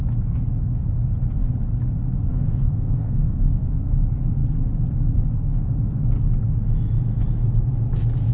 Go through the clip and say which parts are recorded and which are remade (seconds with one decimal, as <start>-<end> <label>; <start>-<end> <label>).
0.0-2.3 recorded; 2.3-3.7 remade; 3.7-8.3 recorded